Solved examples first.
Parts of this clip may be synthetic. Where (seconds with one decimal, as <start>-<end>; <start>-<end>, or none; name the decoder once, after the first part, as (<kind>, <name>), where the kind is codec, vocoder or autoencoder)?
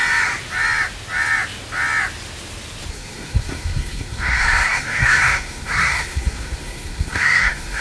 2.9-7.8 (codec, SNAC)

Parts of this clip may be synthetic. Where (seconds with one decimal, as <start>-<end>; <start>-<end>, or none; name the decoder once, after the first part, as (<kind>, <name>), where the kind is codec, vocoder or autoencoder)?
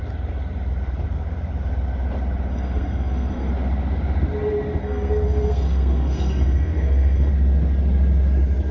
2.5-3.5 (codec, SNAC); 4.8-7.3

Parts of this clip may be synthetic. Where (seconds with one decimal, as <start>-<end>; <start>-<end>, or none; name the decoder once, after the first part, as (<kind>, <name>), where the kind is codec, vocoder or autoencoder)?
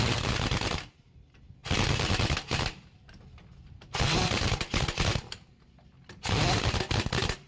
none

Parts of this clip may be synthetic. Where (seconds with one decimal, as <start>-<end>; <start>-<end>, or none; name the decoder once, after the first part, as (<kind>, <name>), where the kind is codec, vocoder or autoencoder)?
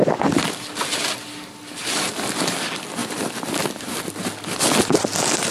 none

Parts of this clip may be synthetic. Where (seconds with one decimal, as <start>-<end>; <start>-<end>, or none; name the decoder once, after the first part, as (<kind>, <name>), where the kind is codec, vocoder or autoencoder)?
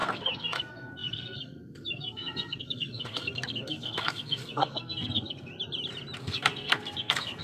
0.0-5.5 (codec, SNAC); 6.2-7.4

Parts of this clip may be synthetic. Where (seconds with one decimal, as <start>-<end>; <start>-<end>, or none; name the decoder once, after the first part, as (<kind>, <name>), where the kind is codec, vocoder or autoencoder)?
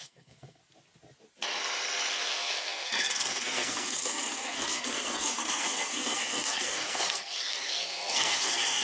0.0-0.6 (codec, SNAC); 2.1-8.8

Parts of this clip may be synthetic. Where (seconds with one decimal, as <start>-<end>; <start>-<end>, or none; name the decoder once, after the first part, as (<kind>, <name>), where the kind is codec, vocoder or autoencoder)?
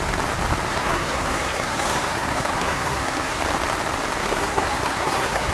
0.7-3.4 (codec, SNAC); 4.2-5.5